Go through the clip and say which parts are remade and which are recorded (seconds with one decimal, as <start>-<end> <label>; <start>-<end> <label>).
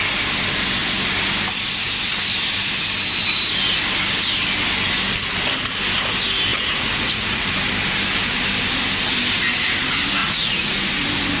0.0-6.5 recorded; 6.5-7.5 remade; 7.5-10.2 recorded; 10.2-10.7 remade; 10.7-11.4 recorded